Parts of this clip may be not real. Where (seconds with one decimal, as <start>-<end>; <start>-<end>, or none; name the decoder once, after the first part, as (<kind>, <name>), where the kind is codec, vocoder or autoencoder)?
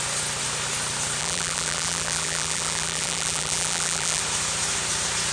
1.2-4.2 (vocoder, BigVGAN v2)